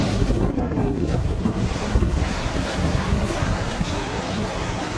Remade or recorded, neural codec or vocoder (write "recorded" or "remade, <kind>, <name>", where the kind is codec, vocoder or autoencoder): remade, codec, SNAC